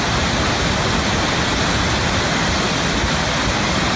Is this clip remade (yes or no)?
no